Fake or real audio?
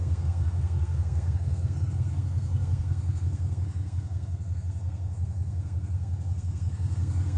fake